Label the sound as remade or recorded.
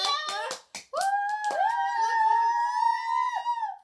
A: recorded